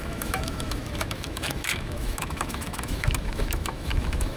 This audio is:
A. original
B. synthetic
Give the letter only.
B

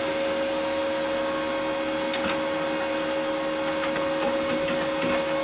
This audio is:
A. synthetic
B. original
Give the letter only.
B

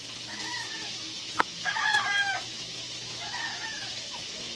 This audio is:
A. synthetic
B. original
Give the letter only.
A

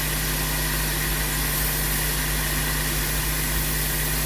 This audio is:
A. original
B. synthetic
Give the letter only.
A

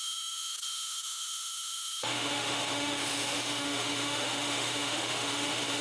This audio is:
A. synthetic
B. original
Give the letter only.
A